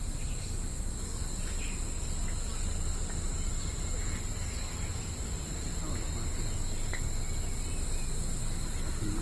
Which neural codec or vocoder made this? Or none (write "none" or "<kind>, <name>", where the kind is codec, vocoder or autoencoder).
none